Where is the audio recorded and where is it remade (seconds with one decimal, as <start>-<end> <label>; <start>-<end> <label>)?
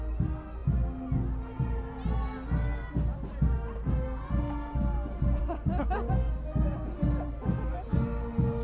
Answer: 0.0-8.6 recorded